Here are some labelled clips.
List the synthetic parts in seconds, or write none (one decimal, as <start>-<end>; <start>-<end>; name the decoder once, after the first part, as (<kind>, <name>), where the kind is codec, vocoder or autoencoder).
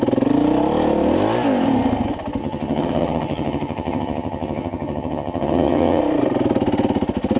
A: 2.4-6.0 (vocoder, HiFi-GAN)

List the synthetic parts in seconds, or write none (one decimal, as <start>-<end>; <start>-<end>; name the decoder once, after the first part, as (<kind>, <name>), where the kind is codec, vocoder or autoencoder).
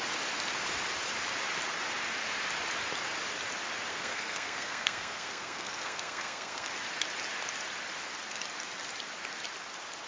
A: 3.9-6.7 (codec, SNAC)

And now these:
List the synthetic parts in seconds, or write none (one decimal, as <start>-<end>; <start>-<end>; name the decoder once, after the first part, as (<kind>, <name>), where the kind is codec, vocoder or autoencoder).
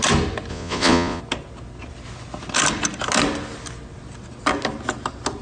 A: 0.5-1.2 (vocoder, Vocos)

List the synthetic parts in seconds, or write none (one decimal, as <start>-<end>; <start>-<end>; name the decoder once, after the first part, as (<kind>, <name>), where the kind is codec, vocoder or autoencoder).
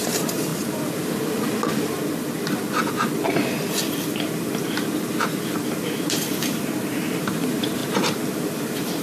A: 0.0-0.5 (vocoder, BigVGAN v2); 5.0-9.0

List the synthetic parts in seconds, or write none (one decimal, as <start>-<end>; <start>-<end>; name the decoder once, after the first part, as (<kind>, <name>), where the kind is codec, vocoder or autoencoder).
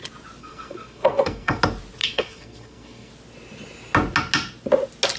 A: 0.4-1.6 (codec, SNAC); 2.0-3.1